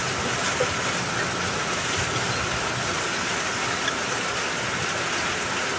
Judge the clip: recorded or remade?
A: recorded